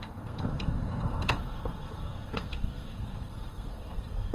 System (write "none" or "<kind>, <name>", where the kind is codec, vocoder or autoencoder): codec, SNAC